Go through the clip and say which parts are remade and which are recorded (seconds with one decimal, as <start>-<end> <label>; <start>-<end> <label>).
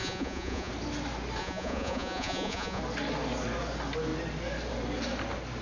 0.0-0.7 remade; 0.7-1.4 recorded; 1.4-2.8 remade; 2.8-5.6 recorded